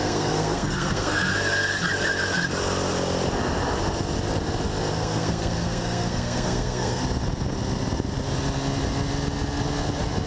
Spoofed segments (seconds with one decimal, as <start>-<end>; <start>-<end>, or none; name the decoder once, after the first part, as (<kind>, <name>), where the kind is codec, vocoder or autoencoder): 0.0-1.3 (codec, SNAC); 4.9-7.0